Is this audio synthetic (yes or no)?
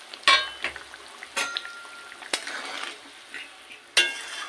no